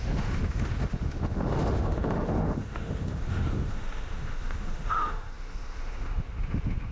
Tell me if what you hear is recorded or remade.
remade